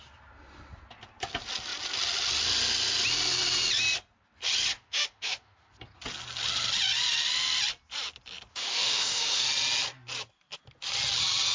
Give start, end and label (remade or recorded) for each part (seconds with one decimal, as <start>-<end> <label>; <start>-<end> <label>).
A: 0.0-4.7 recorded; 4.7-5.7 remade; 5.7-8.5 recorded; 8.5-9.4 remade; 9.4-11.5 recorded

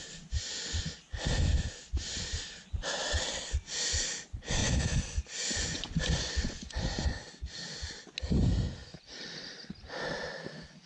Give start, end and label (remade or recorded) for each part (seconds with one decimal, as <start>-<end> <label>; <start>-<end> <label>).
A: 0.0-4.6 recorded; 4.6-7.3 remade; 7.3-10.9 recorded

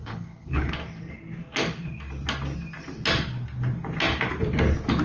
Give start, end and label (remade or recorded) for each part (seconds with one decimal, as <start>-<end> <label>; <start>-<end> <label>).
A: 0.0-0.7 remade; 0.7-5.0 recorded

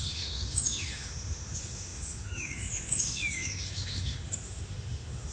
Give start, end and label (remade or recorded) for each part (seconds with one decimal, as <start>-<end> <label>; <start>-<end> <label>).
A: 0.0-5.3 remade